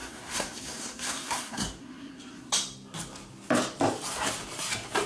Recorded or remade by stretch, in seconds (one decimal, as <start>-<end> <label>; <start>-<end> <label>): 0.0-2.5 remade; 2.5-5.1 recorded